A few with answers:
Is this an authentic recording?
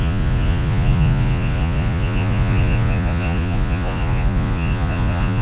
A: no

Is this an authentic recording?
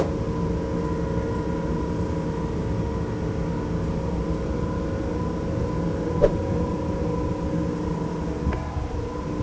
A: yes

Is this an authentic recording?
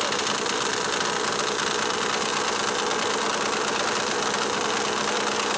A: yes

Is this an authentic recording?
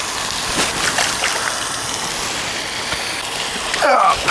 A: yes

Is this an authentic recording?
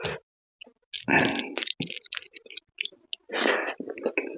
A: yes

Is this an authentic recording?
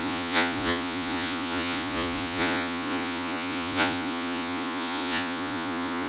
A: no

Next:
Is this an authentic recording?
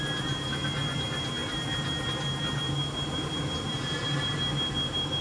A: yes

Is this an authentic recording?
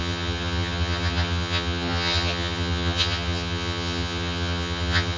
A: no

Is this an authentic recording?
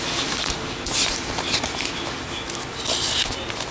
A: yes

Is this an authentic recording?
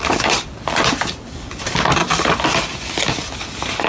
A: no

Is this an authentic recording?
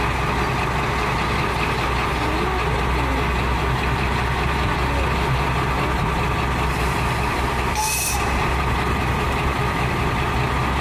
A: yes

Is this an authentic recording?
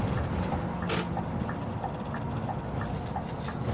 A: yes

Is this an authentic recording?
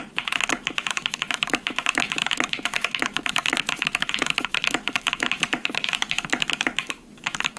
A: no